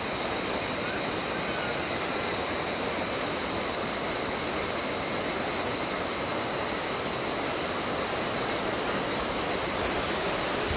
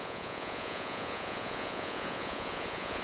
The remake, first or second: second